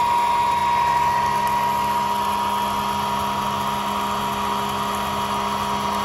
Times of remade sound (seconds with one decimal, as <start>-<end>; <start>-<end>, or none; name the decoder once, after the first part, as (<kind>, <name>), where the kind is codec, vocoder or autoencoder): none

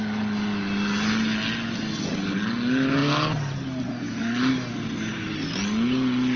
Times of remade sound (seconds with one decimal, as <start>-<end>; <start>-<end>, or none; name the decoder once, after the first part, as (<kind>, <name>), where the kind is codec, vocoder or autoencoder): none

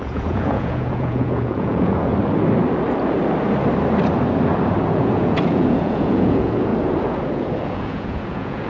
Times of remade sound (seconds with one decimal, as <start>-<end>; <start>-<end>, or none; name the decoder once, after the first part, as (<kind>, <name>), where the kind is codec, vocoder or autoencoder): 0.0-2.1 (vocoder, Vocos); 4.9-6.7; 7.3-8.7

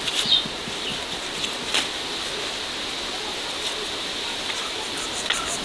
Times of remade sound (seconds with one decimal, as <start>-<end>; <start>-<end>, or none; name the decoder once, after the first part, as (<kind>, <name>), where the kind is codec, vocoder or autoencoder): 3.3-5.1 (vocoder, BigVGAN v2)